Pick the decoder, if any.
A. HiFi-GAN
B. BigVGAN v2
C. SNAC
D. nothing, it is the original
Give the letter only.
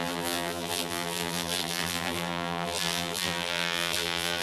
B